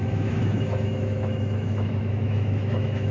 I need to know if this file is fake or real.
fake